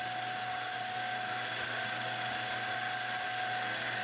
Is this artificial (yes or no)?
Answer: no